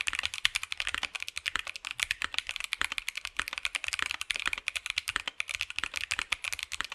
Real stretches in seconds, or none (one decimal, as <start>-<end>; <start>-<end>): 0.0-1.9; 6.0-6.9